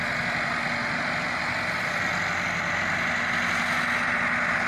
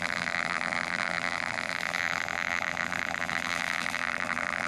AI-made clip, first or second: second